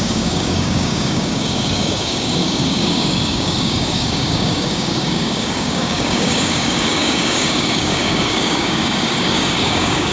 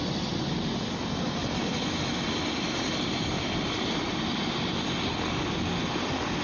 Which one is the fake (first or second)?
first